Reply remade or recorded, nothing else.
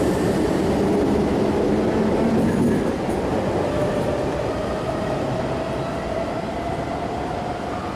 recorded